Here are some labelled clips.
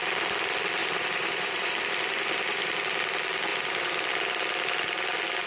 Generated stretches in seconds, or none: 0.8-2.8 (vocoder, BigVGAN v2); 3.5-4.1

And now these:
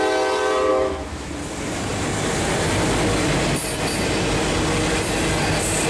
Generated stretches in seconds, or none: 0.7-1.3 (autoencoder, DAC-VAE)

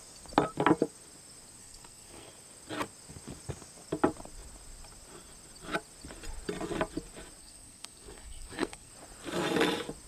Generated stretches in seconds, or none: 1.6-2.3 (codec, SNAC); 7.4-8.9

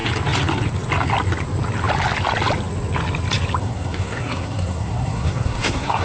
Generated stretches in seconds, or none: 3.6-6.0 (codec, SNAC)

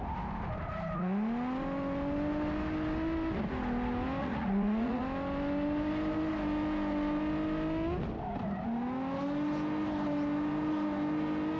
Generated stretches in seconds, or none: 4.2-5.0 (vocoder, Vocos)

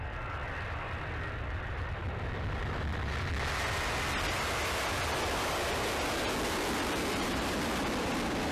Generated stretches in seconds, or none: 0.0-2.0 (vocoder, BigVGAN v2); 7.1-8.5

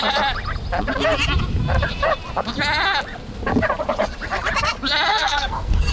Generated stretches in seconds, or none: 5.1-5.9 (codec, SNAC)